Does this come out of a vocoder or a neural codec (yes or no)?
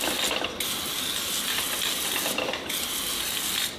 no